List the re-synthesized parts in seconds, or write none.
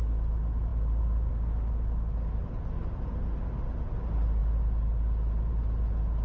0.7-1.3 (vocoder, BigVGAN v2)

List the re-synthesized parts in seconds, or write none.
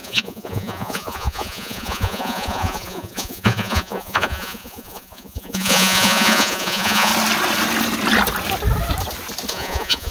0.0-7.1 (vocoder, Vocos); 9.5-10.1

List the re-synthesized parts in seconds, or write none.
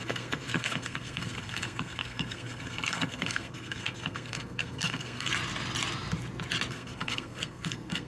0.0-5.3 (codec, SNAC); 6.7-8.1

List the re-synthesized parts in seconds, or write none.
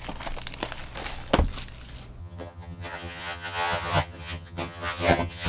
2.2-5.5 (vocoder, HiFi-GAN)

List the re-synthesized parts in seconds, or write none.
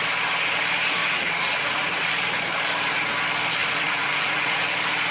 1.0-2.1 (vocoder, Vocos); 3.6-4.6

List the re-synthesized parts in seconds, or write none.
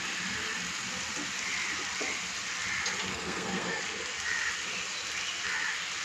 3.1-3.8 (codec, SNAC)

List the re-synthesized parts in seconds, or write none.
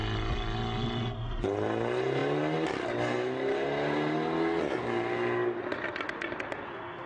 none